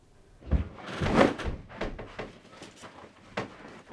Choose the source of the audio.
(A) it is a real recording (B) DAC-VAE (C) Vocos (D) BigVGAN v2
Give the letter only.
A